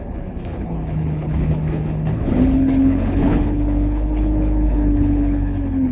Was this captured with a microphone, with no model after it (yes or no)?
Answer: no